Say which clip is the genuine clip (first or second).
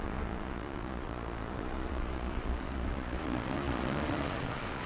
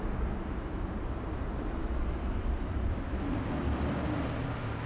second